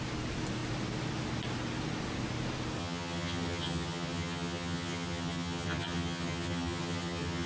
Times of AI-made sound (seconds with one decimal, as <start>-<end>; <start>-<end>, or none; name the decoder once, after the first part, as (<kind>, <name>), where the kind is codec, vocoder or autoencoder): 2.8-7.5 (vocoder, HiFi-GAN)